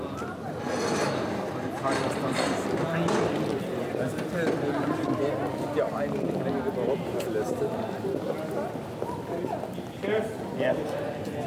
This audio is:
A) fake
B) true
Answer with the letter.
B